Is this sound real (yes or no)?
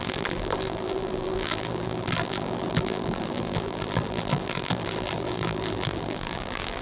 no